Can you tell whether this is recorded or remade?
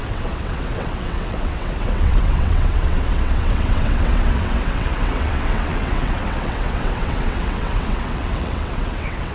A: remade